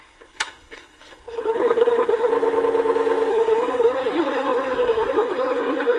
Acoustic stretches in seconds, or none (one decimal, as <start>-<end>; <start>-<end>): 2.3-3.3